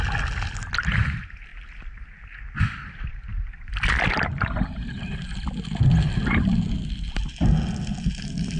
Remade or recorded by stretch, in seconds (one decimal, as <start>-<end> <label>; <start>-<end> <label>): 0.0-8.6 recorded